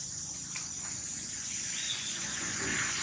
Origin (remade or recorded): remade